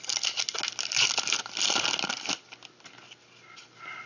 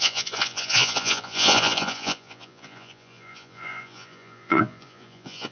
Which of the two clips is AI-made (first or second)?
second